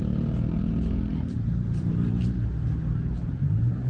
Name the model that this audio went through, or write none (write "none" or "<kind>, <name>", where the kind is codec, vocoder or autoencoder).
vocoder, BigVGAN v2